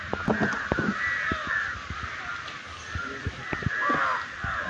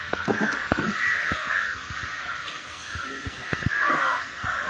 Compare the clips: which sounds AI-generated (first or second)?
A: second